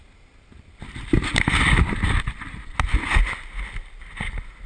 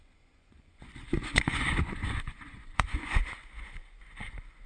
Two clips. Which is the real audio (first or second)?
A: first